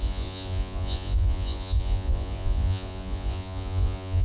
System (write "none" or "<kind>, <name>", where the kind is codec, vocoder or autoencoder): vocoder, Vocos